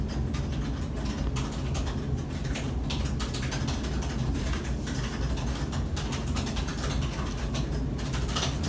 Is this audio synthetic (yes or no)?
no